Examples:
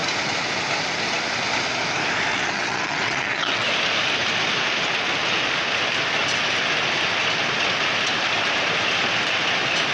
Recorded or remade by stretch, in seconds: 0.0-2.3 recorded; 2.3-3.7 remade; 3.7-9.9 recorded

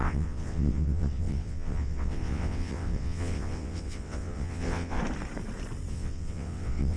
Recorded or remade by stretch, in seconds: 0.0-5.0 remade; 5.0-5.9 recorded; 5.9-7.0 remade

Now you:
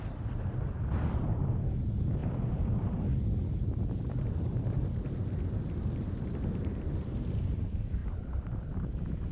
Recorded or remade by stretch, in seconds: 0.0-9.3 recorded

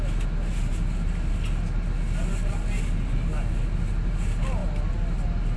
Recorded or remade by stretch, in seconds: 0.0-5.6 recorded

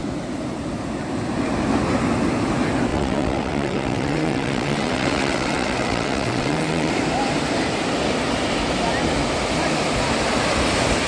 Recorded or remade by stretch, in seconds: 0.0-2.9 recorded; 2.9-6.9 remade; 6.9-11.1 recorded